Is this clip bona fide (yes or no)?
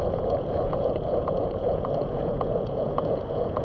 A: no